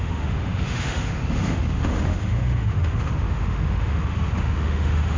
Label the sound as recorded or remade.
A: remade